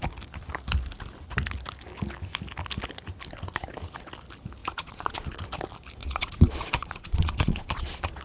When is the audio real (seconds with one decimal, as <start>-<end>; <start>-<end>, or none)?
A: 0.0-4.6; 5.4-6.0